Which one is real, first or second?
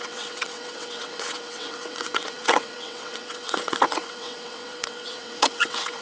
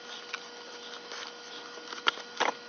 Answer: second